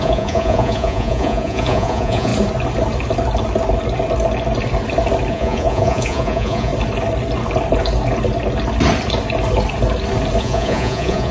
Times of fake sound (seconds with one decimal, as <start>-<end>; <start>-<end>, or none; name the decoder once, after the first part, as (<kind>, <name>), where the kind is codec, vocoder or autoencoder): 0.0-2.3 (vocoder, Vocos); 5.3-6.7; 10.4-11.3